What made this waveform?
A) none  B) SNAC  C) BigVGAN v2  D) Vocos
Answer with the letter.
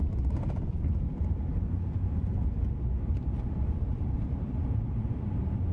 C